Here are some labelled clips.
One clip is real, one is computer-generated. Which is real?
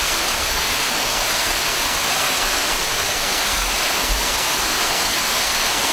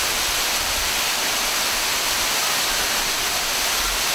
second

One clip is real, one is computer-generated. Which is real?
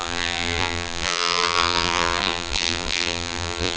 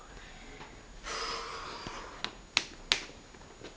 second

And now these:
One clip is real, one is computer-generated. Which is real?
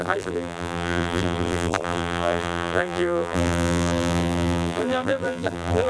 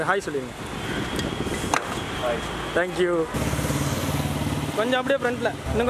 second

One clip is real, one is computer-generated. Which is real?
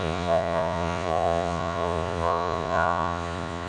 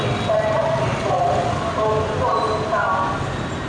second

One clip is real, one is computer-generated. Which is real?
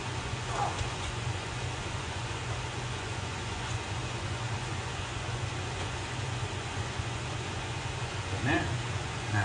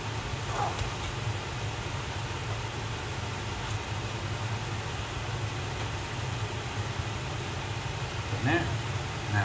second